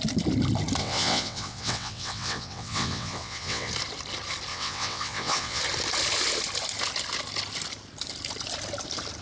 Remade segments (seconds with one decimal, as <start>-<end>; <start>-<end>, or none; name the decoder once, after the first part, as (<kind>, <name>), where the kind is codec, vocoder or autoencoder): 0.8-3.7 (vocoder, WaveNeXt); 4.5-5.6